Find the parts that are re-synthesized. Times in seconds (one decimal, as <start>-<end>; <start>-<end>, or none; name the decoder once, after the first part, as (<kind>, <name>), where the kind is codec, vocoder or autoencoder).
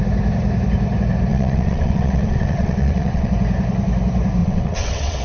1.3-3.3 (vocoder, WaveNeXt); 4.4-5.2